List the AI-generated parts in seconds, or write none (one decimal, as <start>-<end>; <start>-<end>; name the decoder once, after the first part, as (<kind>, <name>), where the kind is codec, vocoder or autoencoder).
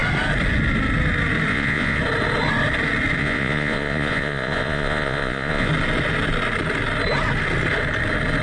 1.5-2.0 (vocoder, Vocos); 3.2-5.7